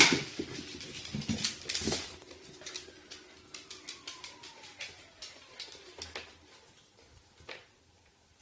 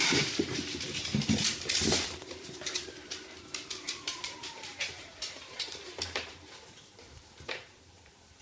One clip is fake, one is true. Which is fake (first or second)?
second